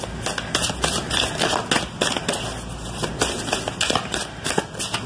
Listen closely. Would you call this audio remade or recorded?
recorded